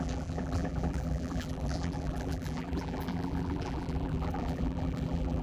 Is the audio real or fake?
fake